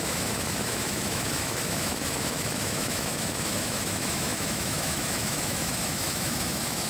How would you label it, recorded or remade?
remade